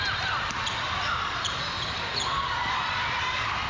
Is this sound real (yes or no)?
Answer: yes